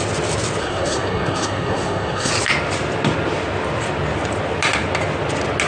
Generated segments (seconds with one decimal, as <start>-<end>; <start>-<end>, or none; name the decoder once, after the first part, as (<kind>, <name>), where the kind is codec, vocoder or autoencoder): 0.6-2.3 (codec, SNAC)